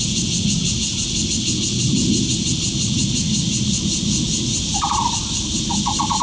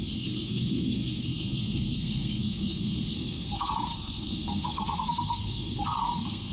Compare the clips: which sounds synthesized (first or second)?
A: second